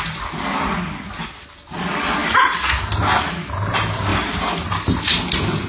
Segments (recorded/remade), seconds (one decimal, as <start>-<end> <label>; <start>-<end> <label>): 0.0-4.1 recorded; 4.1-5.2 remade; 5.2-5.7 recorded

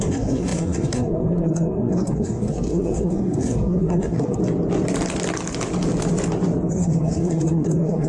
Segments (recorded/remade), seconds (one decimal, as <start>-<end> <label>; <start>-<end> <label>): 0.0-4.4 remade; 4.4-6.7 recorded; 6.7-8.1 remade

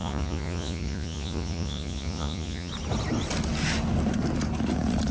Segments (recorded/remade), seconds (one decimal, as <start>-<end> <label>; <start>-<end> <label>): 0.0-2.7 remade; 2.7-5.1 recorded

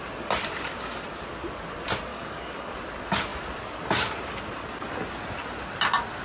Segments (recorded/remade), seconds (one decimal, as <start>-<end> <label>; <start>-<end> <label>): 0.0-2.1 recorded; 2.1-2.7 remade; 2.7-6.2 recorded